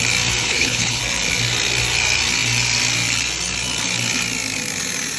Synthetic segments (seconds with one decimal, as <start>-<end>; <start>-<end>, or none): 0.4-1.0